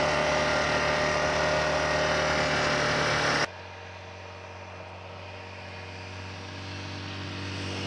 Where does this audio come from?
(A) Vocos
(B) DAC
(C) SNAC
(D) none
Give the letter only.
D